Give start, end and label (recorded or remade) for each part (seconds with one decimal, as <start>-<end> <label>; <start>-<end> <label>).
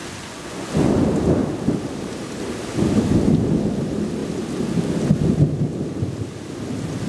0.0-0.9 remade; 0.9-7.1 recorded